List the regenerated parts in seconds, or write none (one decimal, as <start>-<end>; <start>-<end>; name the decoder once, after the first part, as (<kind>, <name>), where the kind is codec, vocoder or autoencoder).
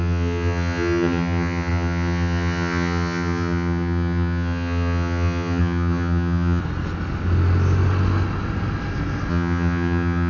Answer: 0.0-6.6 (vocoder, HiFi-GAN); 9.3-10.3